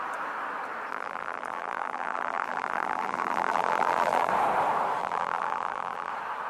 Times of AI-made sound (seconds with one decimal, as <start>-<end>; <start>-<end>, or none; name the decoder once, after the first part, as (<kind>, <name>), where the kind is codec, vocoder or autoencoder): 0.9-4.3 (vocoder, BigVGAN v2); 5.0-6.1